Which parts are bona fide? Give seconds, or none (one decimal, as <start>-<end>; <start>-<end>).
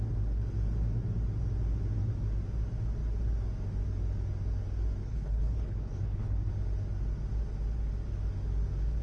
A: 0.0-5.0; 6.5-9.0